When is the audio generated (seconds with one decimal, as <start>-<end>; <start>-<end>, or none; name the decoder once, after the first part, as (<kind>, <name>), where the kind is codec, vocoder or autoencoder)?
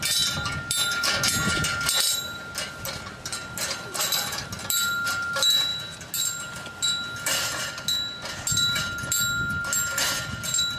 none